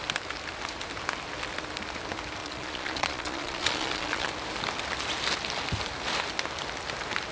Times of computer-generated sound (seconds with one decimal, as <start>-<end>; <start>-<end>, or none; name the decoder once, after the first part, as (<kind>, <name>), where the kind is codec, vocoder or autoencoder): 2.4-4.3 (vocoder, Vocos)